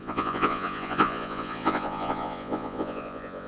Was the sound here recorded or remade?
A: remade